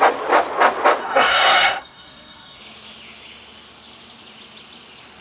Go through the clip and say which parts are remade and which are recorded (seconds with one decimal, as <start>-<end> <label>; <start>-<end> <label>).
0.0-1.0 recorded; 1.0-2.6 remade; 2.6-5.2 recorded